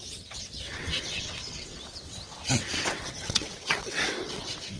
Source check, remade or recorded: remade